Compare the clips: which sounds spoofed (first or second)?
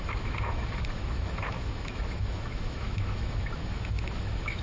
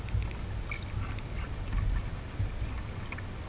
first